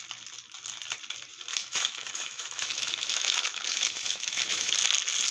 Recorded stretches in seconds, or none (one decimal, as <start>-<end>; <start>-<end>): 0.0-1.5; 4.7-5.3